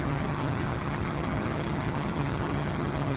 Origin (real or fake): fake